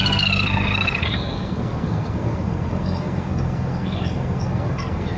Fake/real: fake